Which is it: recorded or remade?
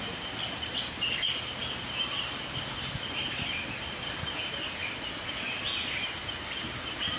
recorded